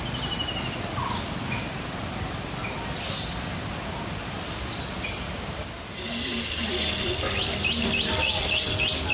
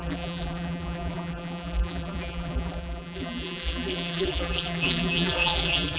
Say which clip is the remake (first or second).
second